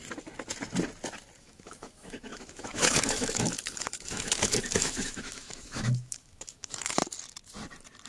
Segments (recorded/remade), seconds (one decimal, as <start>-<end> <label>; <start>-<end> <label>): 0.0-1.4 recorded; 1.4-7.0 remade; 7.0-8.1 recorded